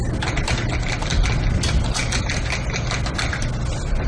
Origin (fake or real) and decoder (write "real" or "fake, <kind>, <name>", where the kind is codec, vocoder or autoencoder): real